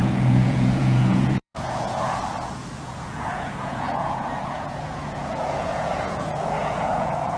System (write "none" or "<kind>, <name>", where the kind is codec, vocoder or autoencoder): vocoder, Vocos